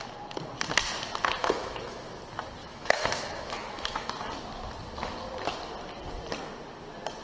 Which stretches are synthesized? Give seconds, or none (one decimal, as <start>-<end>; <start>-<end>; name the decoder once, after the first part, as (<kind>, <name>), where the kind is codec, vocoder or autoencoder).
1.4-2.2 (autoencoder, DAC-VAE); 2.6-4.1